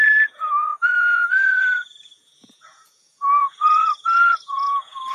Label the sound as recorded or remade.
remade